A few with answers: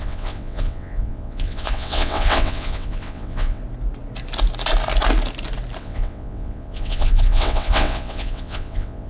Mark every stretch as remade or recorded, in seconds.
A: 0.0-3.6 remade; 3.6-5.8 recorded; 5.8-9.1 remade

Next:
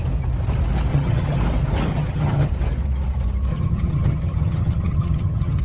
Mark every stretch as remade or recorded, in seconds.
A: 0.0-0.9 recorded; 0.9-1.4 remade; 1.4-1.9 recorded; 1.9-2.5 remade; 2.5-3.5 recorded; 3.5-5.6 remade

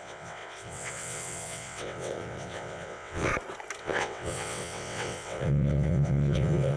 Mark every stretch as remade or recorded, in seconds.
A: 0.0-3.3 remade; 3.3-3.8 recorded; 3.8-6.8 remade

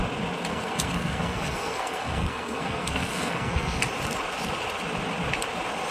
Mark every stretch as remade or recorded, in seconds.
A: 0.0-0.5 recorded; 0.5-3.8 remade; 3.8-5.9 recorded